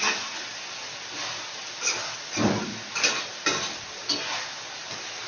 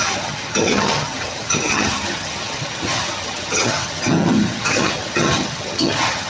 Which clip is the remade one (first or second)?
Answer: second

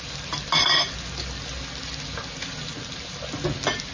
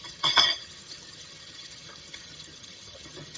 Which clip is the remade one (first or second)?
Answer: second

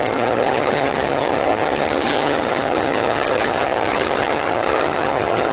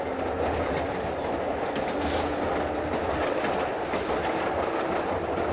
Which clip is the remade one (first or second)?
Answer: first